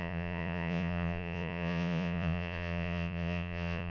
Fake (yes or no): yes